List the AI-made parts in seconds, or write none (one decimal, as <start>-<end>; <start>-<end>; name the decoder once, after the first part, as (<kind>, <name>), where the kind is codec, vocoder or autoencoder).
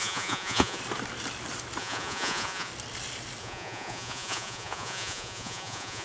0.0-0.8 (vocoder, Vocos); 1.8-2.7; 3.4-6.0